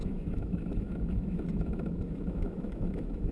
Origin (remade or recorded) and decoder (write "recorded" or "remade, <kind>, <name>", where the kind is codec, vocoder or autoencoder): remade, autoencoder, DAC-VAE